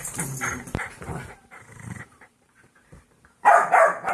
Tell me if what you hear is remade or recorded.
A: remade